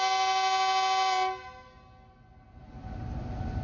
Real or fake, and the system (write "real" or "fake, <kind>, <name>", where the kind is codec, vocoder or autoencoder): real